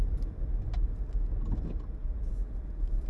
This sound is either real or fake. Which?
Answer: real